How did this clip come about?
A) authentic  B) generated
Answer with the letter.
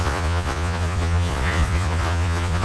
B